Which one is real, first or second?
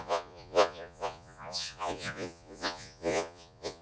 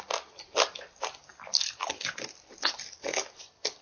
second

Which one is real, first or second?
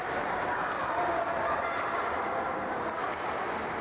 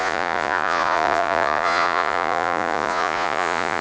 first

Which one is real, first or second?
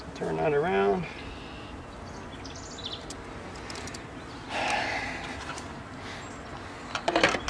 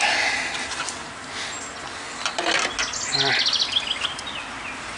second